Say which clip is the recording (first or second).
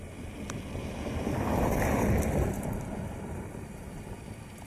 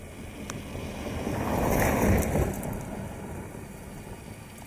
second